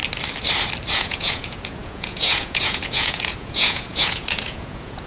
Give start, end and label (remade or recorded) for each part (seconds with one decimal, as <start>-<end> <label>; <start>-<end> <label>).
0.0-0.9 recorded; 0.9-5.1 remade